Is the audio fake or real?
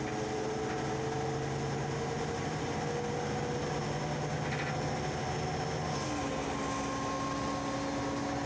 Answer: real